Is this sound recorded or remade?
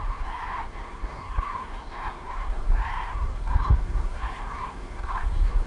remade